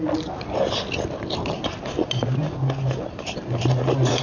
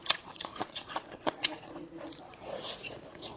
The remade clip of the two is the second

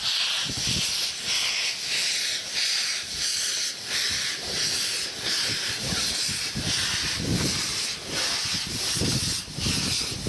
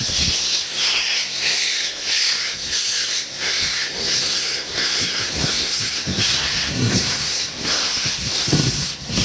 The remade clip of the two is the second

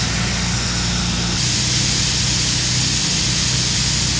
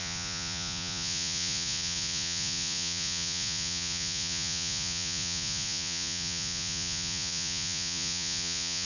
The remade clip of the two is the second